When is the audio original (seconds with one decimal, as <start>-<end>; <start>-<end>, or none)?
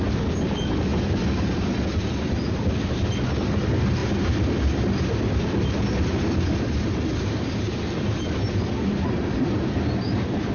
0.0-10.5